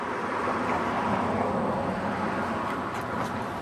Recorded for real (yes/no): yes